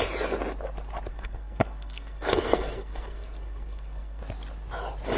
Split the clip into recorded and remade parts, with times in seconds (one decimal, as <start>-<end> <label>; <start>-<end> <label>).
0.0-1.1 recorded; 1.1-4.2 remade; 4.2-5.2 recorded